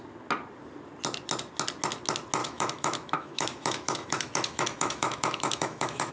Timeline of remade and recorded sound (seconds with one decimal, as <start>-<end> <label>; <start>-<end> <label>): 0.0-2.4 recorded; 2.4-6.1 remade